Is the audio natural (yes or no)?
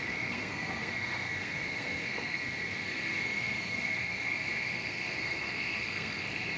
no